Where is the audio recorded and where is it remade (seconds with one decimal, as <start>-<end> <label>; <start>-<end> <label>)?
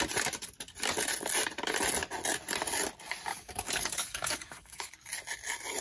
0.0-3.3 recorded; 3.3-5.1 remade; 5.1-5.8 recorded